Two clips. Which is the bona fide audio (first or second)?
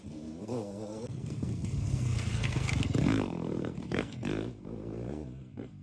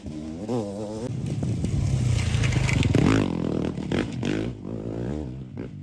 second